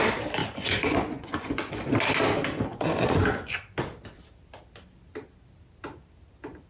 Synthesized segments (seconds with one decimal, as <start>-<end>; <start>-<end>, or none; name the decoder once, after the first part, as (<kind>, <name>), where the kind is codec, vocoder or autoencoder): 0.4-1.7 (vocoder, Vocos); 2.7-3.6